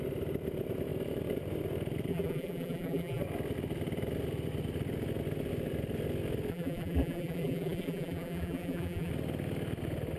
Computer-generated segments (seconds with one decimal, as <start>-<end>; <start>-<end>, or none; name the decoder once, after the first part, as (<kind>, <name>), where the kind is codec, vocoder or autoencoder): 2.1-3.2 (vocoder, BigVGAN v2); 6.5-9.1